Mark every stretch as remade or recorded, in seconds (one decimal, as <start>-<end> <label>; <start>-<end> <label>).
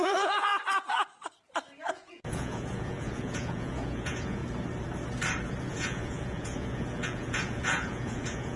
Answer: 0.0-0.5 remade; 0.5-1.9 recorded; 1.9-4.4 remade; 4.4-5.6 recorded; 5.6-8.6 remade